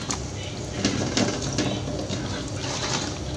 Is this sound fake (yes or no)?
no